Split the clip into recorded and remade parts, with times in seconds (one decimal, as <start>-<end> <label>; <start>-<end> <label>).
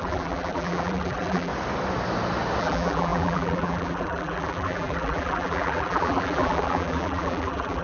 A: 0.0-1.5 remade; 1.5-2.6 recorded; 2.6-7.8 remade